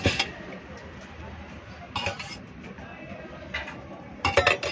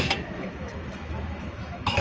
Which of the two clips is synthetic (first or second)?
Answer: second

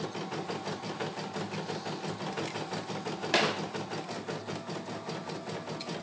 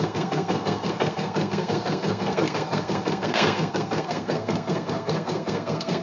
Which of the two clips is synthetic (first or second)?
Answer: second